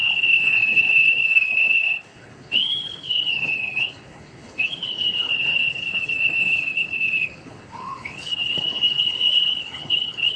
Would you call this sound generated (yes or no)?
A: yes